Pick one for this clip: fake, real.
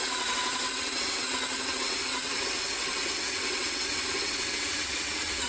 fake